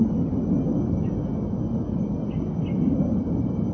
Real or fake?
real